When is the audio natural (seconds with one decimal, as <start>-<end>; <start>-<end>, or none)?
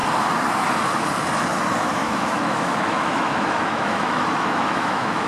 0.0-2.0